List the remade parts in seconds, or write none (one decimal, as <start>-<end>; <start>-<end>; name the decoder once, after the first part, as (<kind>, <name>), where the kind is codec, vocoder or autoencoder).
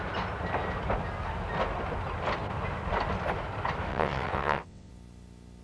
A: 3.9-4.9 (vocoder, WaveNeXt)